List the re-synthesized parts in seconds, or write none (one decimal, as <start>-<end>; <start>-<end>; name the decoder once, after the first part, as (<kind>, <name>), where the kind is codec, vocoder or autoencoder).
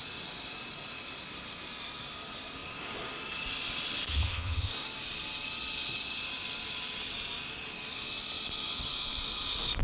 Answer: 4.1-4.7 (vocoder, HiFi-GAN)